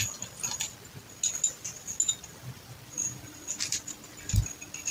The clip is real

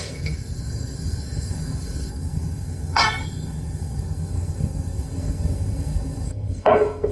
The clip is fake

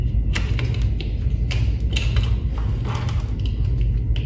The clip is real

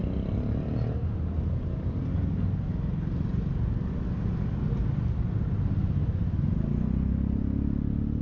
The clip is real